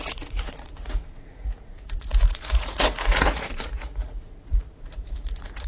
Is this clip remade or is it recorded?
remade